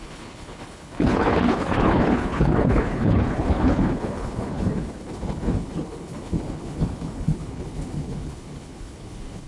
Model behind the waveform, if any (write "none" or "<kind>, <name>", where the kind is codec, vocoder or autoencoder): codec, HILCodec